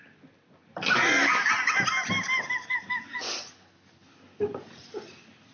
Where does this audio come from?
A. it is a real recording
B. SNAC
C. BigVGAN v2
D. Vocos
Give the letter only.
A